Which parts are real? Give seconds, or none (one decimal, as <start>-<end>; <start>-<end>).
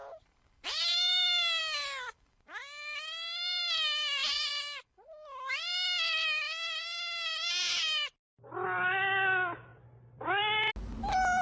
0.0-11.4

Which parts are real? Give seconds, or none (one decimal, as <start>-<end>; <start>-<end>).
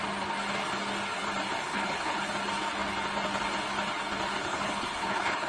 0.0-1.6; 2.3-4.4